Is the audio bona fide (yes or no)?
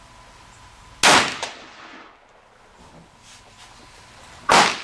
yes